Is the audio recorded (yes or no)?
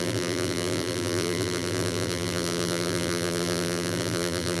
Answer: no